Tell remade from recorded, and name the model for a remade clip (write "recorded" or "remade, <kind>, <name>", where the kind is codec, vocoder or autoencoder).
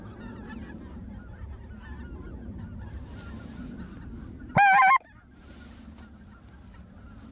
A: recorded